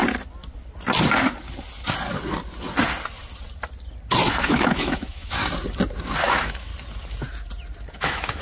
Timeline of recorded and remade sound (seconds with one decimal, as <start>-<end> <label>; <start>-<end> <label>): 0.0-4.3 recorded; 4.3-5.4 remade; 5.4-6.2 recorded; 6.2-6.7 remade; 6.7-7.9 recorded; 7.9-8.4 remade